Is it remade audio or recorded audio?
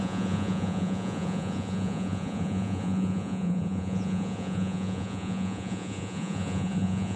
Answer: remade